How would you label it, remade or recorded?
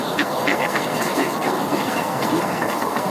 remade